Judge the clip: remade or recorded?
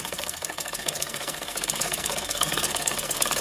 remade